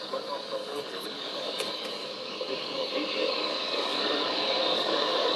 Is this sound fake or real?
fake